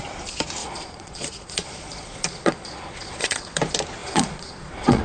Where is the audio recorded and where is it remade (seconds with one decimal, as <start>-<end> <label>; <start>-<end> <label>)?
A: 0.0-0.6 recorded; 0.6-3.6 remade; 3.6-4.0 recorded; 4.0-5.0 remade